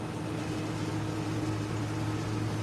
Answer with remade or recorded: recorded